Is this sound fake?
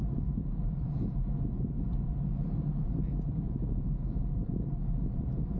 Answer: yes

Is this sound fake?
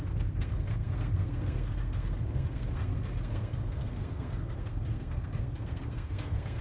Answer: yes